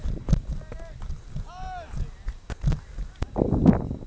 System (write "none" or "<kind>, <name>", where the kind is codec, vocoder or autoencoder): none